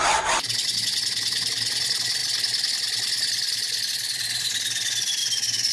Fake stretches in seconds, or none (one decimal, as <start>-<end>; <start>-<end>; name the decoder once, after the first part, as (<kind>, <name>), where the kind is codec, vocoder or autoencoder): none